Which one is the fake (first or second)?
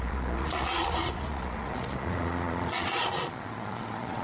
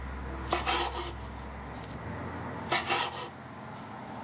first